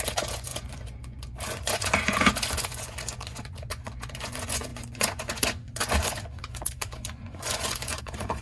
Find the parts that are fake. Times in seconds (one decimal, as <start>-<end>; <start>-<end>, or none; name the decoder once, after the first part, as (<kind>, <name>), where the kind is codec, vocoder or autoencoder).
0.0-8.4 (vocoder, Vocos)